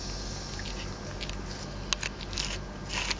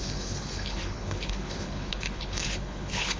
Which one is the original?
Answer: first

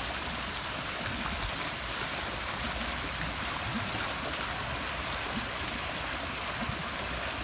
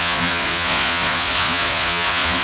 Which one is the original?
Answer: first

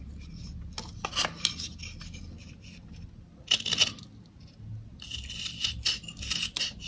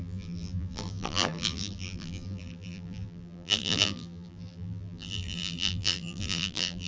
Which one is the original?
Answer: first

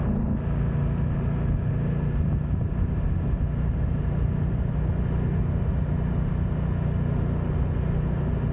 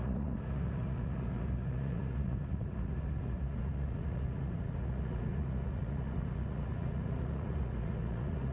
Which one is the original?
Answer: first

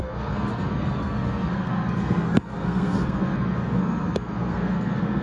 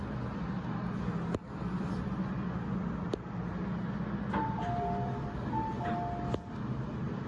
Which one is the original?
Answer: second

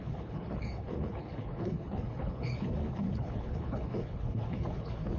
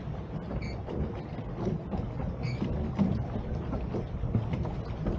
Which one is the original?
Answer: second